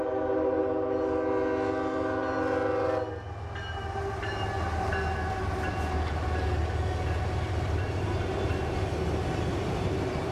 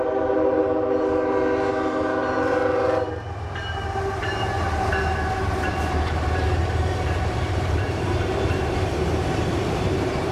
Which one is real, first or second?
first